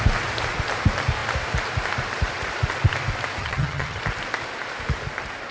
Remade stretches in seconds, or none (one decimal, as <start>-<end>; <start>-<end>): 3.4-4.0